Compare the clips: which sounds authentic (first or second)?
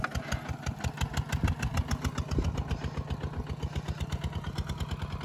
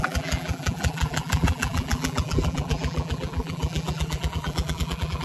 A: first